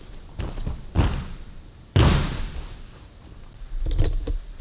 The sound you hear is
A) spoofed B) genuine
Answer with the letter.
B